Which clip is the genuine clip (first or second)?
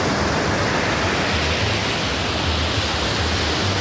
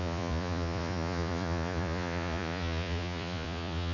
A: first